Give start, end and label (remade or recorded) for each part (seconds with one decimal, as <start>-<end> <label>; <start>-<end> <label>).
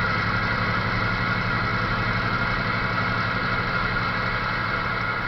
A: 0.0-5.3 recorded